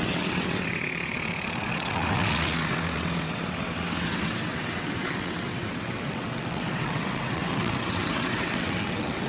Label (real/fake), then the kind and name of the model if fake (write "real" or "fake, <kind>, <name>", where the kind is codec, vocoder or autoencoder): fake, vocoder, WaveNeXt